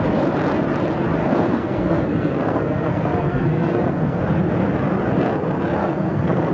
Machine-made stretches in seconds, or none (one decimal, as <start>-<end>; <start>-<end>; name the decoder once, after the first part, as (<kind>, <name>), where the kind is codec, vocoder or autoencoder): 1.2-4.2 (codec, SNAC); 5.8-6.5